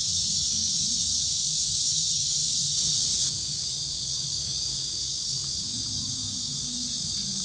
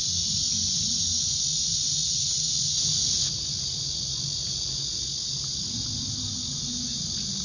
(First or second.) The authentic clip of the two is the second